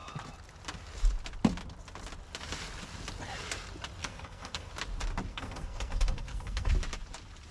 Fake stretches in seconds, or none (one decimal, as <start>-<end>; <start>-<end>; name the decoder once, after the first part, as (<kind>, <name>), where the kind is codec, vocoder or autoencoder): 4.0-4.7 (codec, SNAC); 5.3-6.7